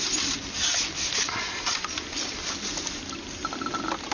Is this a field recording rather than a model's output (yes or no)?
yes